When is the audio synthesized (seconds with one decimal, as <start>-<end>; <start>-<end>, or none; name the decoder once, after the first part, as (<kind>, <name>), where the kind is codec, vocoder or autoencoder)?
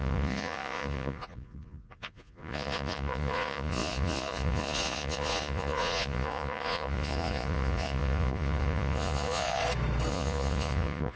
0.0-9.6 (vocoder, Vocos); 10.1-11.2